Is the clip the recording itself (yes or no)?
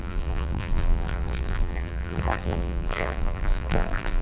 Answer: no